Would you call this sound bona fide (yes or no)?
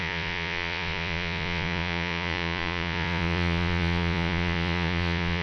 no